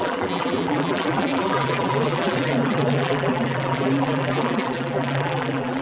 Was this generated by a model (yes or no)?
yes